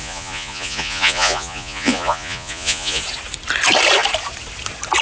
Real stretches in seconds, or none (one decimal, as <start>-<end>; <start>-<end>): 3.0-5.0